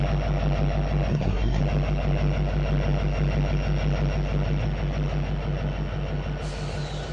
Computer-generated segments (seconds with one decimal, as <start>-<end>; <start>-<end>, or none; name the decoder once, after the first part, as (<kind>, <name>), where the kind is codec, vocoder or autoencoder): 1.1-1.6 (codec, SNAC)